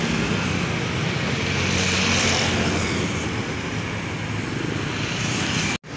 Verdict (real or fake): real